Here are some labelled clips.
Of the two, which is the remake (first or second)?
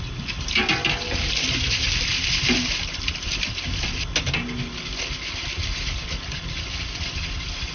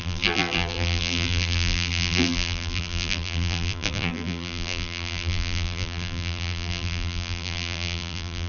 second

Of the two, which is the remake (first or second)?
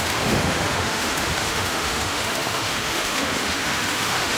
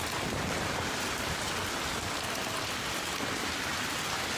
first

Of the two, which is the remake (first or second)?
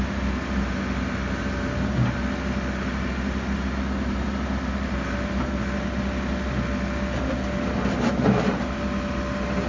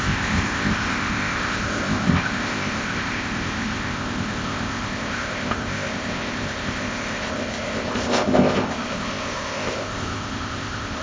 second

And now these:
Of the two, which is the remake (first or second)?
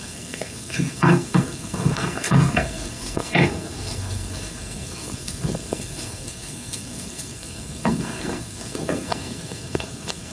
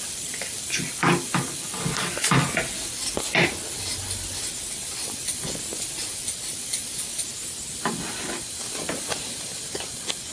first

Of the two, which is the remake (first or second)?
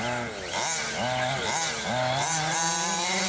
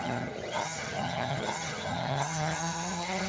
second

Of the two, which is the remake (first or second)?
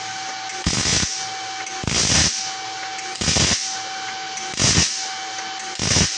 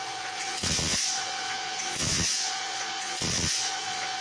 second